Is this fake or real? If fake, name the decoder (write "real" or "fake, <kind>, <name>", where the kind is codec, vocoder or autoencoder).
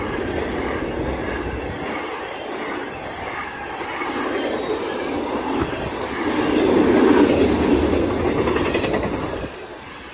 real